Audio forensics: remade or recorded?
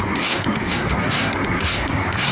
remade